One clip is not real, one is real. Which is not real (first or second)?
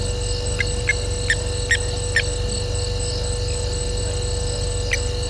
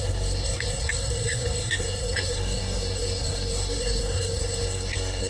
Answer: second